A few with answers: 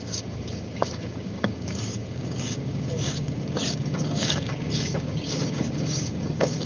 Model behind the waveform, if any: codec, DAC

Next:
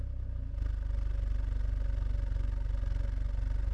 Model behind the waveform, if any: none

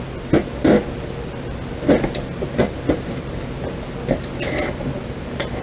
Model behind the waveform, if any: none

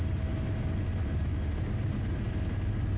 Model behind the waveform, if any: none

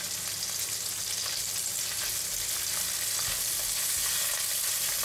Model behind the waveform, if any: none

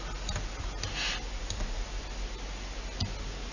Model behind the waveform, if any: none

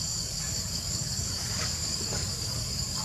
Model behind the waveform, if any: codec, DAC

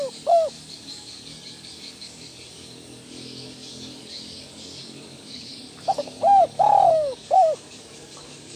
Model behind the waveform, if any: codec, DAC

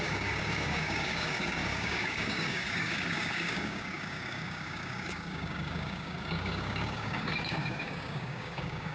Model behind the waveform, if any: codec, DAC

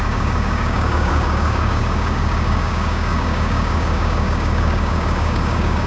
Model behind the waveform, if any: codec, DAC